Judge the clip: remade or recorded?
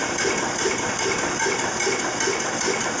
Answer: recorded